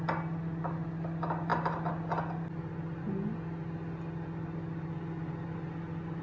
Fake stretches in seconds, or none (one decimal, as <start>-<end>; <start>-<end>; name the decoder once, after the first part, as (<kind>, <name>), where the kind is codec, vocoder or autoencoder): none